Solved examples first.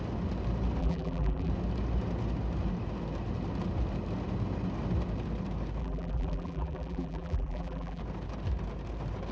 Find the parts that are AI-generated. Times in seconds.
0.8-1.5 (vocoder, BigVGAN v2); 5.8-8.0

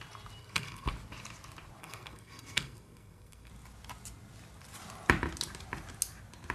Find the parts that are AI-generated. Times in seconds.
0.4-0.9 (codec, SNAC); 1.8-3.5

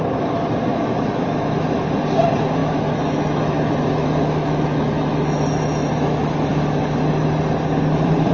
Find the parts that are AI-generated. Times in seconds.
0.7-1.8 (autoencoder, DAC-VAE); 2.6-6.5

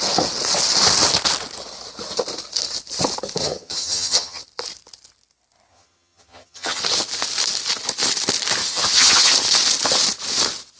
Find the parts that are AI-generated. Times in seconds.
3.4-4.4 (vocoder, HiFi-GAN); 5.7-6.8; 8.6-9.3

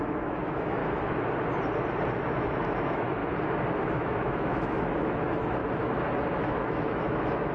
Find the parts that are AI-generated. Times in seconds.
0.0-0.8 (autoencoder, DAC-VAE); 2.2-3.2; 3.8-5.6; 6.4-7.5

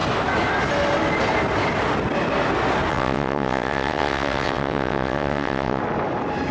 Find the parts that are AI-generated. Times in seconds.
2.9-5.8 (vocoder, WaveNeXt)